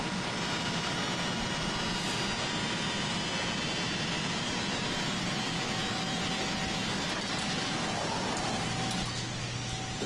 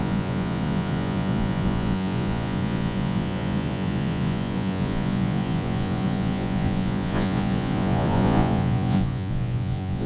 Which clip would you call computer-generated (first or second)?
second